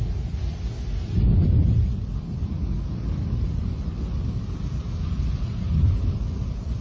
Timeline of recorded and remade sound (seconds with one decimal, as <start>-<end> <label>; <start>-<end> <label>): 0.0-6.8 recorded